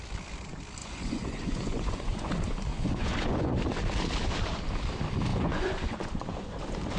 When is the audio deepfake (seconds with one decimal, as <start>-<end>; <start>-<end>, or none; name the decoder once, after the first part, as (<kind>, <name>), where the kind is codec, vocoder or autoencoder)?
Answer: 0.8-2.3 (vocoder, Vocos); 2.7-3.5; 5.3-6.6